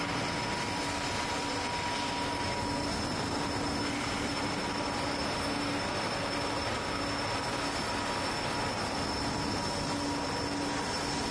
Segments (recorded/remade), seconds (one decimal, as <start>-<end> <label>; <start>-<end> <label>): 0.0-11.3 recorded